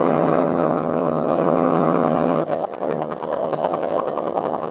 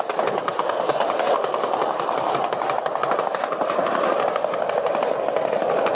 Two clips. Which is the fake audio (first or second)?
first